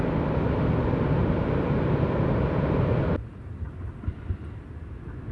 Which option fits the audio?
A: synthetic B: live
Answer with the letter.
B